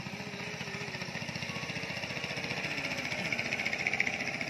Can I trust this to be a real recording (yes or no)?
yes